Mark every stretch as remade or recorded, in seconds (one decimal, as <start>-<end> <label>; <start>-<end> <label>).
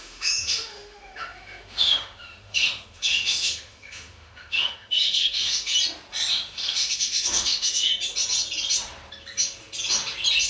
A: 0.0-5.7 remade; 5.7-6.3 recorded; 6.3-7.9 remade; 7.9-10.5 recorded